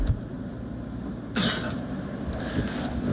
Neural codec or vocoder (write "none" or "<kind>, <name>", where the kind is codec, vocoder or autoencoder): none